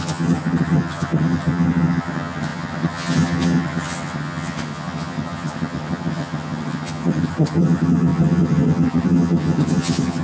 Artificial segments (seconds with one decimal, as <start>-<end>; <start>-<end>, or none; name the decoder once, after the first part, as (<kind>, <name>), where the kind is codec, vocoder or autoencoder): 0.0-10.2 (vocoder, HiFi-GAN)